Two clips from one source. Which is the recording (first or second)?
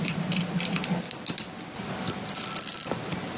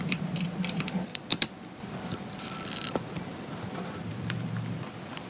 first